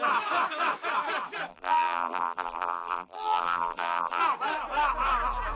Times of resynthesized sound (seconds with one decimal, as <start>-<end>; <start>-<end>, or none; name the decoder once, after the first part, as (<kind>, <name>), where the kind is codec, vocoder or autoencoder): 1.5-4.2 (vocoder, BigVGAN v2)